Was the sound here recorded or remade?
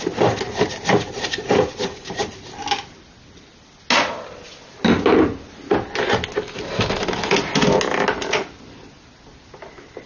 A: recorded